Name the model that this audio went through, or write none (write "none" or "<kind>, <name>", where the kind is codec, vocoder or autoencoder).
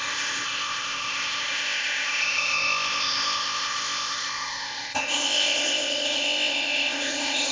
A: codec, ZipCodec